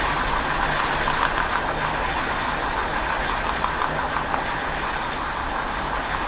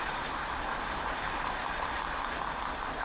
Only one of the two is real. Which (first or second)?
first